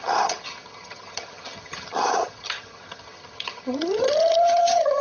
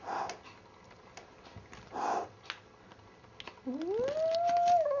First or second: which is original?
second